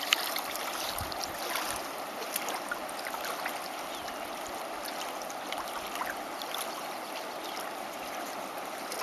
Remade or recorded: recorded